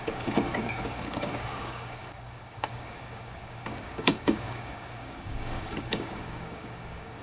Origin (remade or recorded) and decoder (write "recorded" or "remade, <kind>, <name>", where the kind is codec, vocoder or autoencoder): remade, codec, DAC